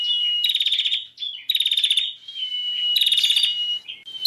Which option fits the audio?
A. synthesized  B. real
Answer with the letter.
B